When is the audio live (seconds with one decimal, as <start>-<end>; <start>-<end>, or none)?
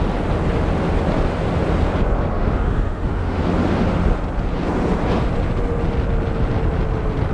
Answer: 0.0-2.3; 3.4-7.3